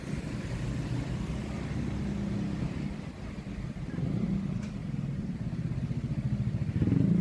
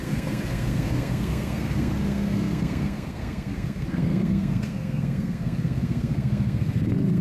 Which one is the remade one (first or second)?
second